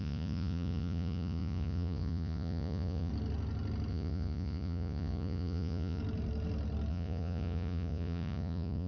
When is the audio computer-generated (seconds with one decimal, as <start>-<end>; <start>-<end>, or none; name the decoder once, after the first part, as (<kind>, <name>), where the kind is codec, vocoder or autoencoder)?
0.0-3.1 (vocoder, Vocos); 3.9-6.0; 6.9-8.9